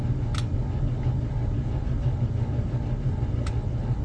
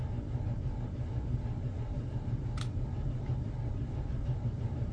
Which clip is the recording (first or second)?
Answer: first